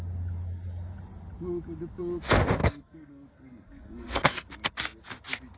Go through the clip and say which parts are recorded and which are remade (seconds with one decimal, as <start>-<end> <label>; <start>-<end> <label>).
0.0-2.6 recorded; 2.6-4.5 remade; 4.5-5.6 recorded